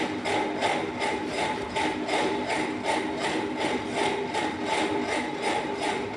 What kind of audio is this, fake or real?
real